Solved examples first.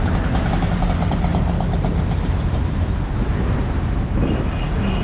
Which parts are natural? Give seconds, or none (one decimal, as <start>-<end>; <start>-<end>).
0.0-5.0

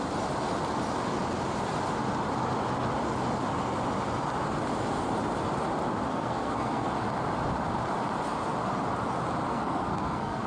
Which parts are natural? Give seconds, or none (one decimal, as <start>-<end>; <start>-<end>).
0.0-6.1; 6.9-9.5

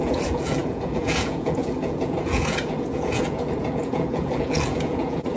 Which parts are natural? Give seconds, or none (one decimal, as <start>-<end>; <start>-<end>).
none